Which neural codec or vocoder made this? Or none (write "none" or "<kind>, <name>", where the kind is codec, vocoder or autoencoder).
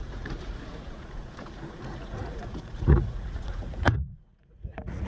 vocoder, Vocos